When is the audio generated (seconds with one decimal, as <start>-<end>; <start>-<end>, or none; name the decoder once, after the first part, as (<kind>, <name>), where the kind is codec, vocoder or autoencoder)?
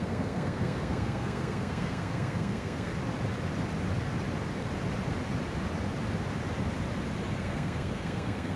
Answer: 0.0-2.9 (codec, SNAC); 7.4-8.6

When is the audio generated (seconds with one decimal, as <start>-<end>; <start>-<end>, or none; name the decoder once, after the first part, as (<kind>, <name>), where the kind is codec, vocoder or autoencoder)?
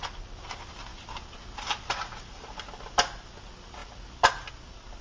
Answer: none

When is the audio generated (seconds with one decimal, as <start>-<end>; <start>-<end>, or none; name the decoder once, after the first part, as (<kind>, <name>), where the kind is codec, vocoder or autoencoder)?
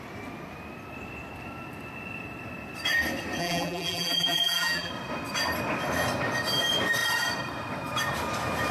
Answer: 3.4-4.9 (vocoder, BigVGAN v2)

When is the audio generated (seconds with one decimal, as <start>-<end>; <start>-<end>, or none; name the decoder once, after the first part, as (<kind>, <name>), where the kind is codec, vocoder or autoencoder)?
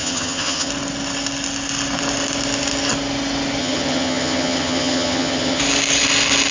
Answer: 0.0-0.7 (vocoder, HiFi-GAN); 3.6-5.6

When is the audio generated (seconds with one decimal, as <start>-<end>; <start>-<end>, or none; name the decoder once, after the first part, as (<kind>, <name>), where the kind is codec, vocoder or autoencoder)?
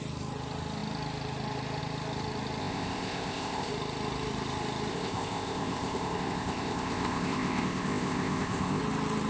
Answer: 2.6-3.7 (codec, ZipCodec); 4.9-8.8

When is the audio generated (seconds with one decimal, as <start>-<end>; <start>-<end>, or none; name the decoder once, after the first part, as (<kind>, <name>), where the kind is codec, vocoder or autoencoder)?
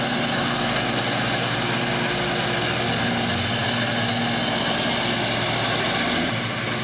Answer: none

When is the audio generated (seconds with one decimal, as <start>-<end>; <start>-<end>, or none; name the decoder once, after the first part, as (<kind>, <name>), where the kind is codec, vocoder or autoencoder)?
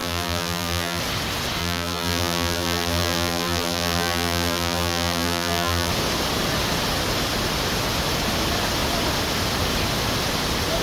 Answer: 0.0-1.0 (vocoder, BigVGAN v2); 1.6-5.9